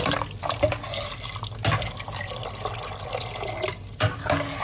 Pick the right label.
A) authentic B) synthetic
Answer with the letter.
A